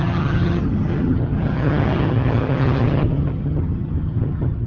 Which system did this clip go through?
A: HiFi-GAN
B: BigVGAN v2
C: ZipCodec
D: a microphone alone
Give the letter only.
A